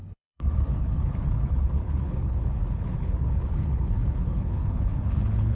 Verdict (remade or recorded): remade